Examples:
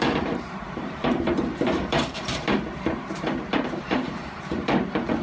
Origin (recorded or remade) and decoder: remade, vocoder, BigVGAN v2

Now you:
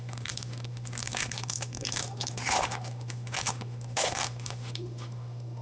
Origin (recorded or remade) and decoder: remade, autoencoder, DAC-VAE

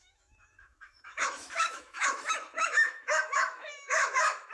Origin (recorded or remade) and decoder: remade, autoencoder, DAC-VAE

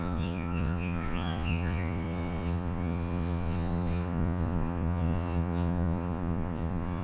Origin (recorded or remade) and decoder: remade, vocoder, Vocos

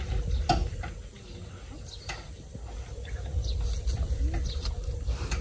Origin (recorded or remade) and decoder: recorded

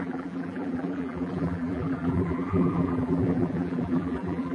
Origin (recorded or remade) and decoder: remade, vocoder, BigVGAN v2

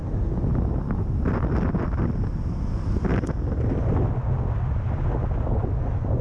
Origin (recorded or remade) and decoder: recorded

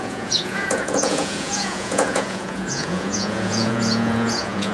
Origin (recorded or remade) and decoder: remade, vocoder, Vocos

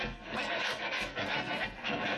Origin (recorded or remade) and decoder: remade, codec, SNAC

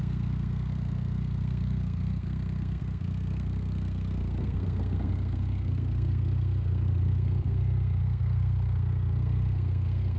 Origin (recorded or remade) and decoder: remade, codec, SNAC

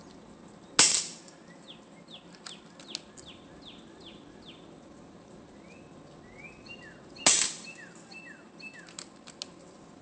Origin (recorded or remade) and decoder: recorded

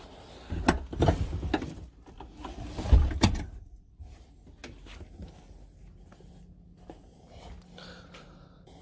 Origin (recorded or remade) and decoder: recorded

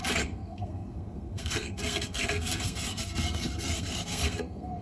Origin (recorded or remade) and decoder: remade, codec, SNAC